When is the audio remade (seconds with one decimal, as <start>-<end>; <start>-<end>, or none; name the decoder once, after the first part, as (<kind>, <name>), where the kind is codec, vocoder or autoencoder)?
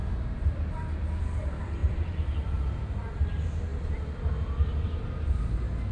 1.8-2.7 (vocoder, BigVGAN v2); 3.7-4.2